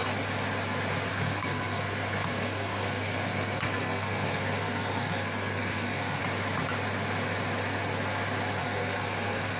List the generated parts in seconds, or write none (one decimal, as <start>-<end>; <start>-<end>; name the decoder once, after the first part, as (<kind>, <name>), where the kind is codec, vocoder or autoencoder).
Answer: 1.1-6.2 (codec, SNAC); 8.6-9.6